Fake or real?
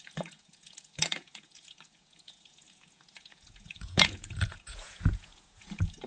fake